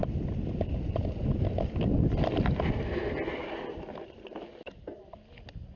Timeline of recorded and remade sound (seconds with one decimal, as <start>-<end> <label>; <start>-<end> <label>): 0.0-5.8 recorded